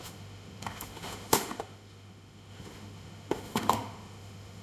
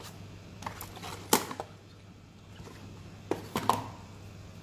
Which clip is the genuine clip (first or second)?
second